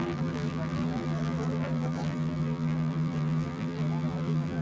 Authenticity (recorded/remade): remade